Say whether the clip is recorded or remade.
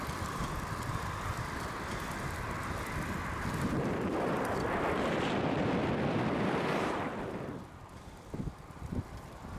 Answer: remade